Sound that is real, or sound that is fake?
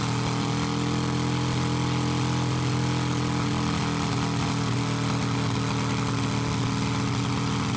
real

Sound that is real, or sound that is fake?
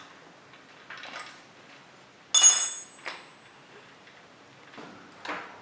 real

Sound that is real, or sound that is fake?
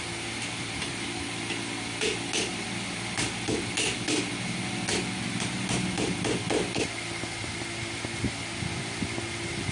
real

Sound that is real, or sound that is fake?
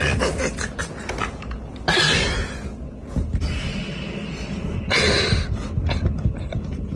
real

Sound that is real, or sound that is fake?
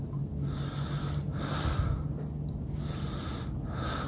real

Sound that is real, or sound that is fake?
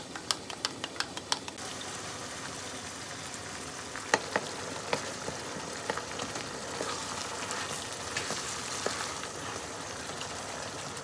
real